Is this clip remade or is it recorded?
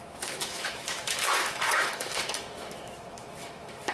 remade